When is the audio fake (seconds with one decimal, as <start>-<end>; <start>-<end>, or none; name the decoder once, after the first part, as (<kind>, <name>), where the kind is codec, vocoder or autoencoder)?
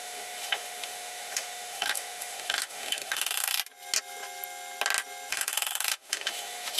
0.0-3.6 (autoencoder, DAC-VAE); 5.3-6.8